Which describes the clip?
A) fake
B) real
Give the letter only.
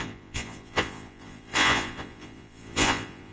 A